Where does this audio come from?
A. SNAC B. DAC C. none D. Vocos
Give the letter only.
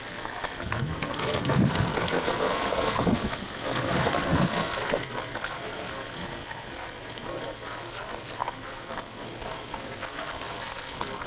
A